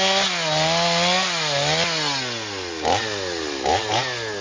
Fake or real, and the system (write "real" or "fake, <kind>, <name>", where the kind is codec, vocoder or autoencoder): real